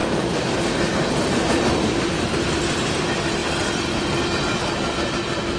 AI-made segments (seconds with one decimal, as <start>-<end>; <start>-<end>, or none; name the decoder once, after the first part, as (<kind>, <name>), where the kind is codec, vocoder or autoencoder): none